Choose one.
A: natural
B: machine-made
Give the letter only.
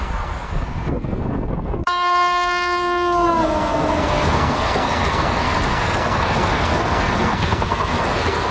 B